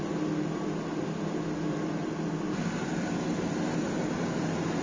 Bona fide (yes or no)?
yes